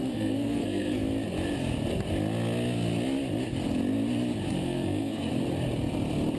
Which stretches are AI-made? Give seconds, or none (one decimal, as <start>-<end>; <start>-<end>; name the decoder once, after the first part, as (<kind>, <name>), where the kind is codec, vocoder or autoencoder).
0.0-1.0 (codec, SNAC); 4.5-5.3